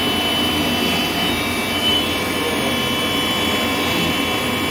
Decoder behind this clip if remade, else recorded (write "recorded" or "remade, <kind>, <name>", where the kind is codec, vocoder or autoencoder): remade, vocoder, BigVGAN v2